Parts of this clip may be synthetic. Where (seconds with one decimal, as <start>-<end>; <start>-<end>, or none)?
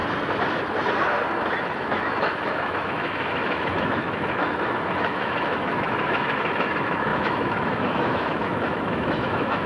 1.6-9.7